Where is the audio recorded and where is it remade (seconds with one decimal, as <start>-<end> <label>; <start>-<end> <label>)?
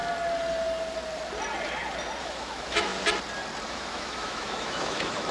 0.0-2.2 recorded; 2.2-2.9 remade; 2.9-3.7 recorded; 3.7-5.3 remade